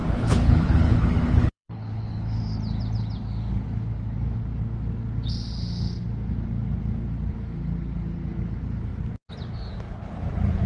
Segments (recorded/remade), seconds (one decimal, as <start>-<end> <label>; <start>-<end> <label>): 0.0-2.4 remade; 2.4-10.7 recorded